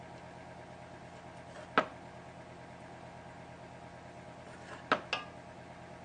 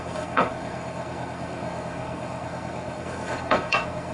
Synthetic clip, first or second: second